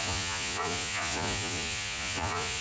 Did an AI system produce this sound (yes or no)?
yes